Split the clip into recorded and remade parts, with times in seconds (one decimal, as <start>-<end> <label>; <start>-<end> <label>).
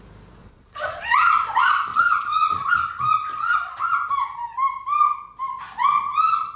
0.0-0.4 recorded; 0.4-1.3 remade; 1.3-1.9 recorded; 1.9-2.7 remade; 2.7-3.3 recorded; 3.3-3.8 remade; 3.8-6.6 recorded